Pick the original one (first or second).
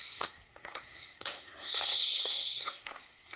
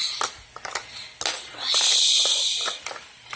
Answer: second